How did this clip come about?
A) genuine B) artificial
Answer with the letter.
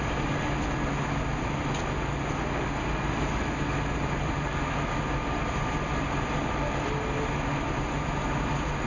A